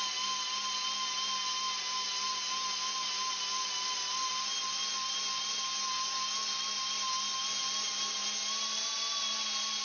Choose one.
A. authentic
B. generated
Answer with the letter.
A